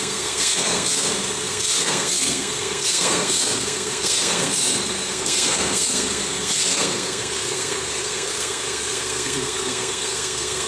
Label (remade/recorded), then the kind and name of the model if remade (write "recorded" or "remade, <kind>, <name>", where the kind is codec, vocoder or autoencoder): remade, codec, SNAC